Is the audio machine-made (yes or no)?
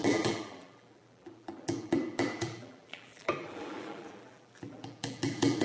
yes